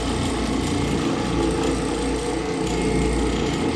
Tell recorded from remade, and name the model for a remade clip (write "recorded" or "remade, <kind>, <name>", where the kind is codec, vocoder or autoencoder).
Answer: recorded